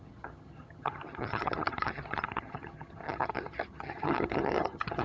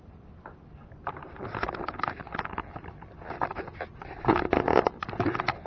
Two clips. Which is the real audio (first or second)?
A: second